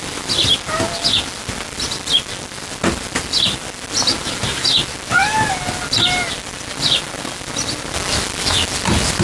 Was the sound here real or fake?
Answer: real